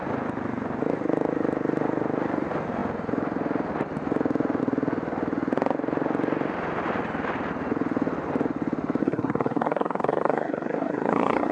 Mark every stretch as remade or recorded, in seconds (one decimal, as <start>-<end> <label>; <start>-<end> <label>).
0.0-9.0 recorded; 9.0-11.5 remade